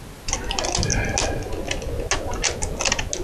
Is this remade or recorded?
recorded